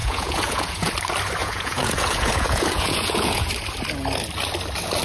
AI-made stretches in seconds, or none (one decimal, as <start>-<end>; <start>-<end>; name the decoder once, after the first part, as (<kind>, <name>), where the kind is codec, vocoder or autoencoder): 0.0-0.9 (vocoder, Vocos); 1.4-3.5